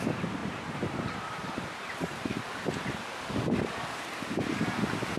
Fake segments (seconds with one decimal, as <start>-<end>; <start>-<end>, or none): 0.4-2.4